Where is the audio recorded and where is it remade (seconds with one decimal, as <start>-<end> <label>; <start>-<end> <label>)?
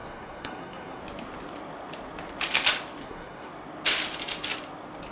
0.0-1.0 remade; 1.0-3.0 recorded; 3.0-3.5 remade; 3.5-5.1 recorded